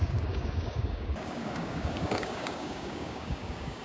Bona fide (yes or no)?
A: no